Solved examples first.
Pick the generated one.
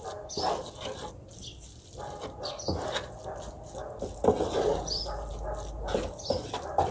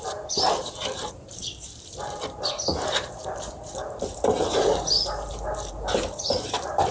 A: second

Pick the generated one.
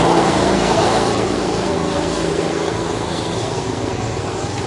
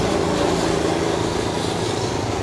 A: first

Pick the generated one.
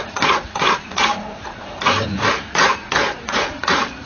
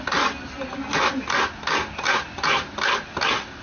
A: first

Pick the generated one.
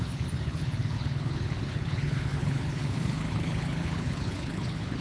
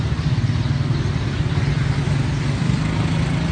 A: first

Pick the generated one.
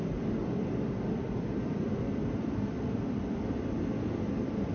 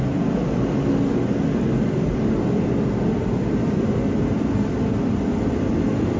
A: first